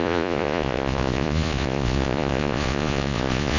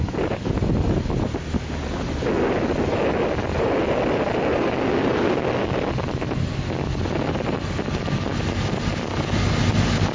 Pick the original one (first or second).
second